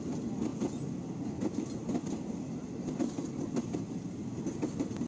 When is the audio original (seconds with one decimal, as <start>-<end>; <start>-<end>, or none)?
0.0-5.1